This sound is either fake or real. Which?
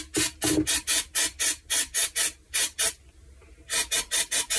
real